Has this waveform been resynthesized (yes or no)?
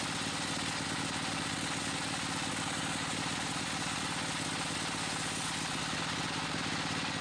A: no